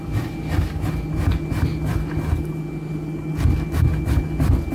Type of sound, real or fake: real